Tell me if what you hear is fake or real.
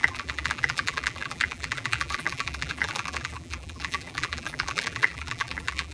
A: fake